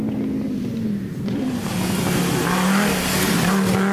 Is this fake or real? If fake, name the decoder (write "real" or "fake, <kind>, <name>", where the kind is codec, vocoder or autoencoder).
real